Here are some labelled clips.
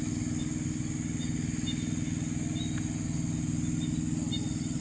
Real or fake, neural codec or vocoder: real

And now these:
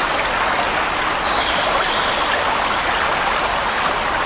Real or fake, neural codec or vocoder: real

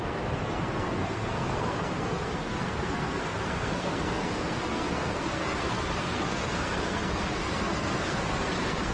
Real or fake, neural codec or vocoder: fake, codec, SNAC